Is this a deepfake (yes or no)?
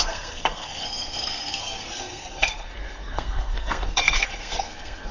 yes